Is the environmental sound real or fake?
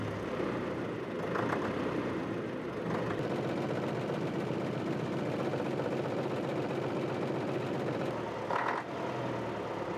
real